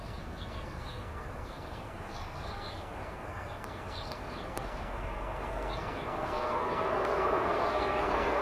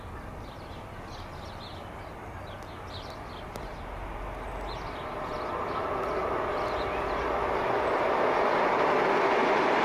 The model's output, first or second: first